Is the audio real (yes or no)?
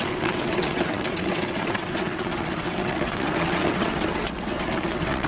no